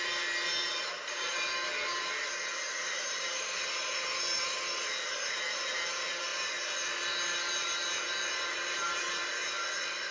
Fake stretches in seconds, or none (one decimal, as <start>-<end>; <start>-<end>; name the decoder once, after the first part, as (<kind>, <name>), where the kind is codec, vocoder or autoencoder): 0.0-10.1 (vocoder, BigVGAN v2)